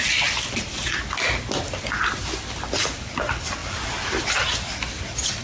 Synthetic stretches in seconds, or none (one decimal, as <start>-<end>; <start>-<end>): none